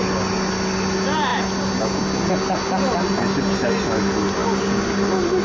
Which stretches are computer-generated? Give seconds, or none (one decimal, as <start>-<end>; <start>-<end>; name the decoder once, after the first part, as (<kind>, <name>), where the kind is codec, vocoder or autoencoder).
none